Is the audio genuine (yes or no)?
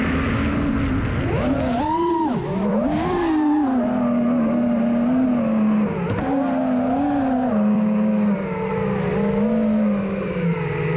yes